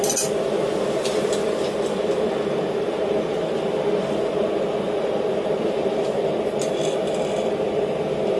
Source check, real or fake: real